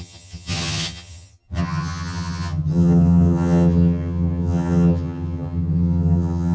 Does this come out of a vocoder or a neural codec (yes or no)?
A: yes